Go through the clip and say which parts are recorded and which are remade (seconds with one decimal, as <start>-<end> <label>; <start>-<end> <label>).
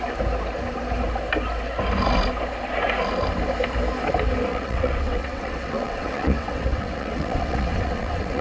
0.0-4.5 recorded; 4.5-8.4 remade